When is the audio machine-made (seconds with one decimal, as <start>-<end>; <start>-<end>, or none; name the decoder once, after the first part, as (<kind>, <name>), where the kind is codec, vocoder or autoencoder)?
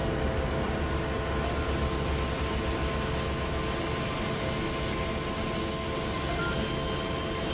none